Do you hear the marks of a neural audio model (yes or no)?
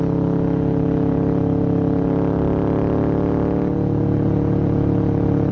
no